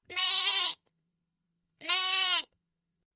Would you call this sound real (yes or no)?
no